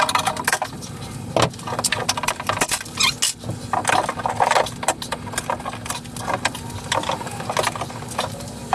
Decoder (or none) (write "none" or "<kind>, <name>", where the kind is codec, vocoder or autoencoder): none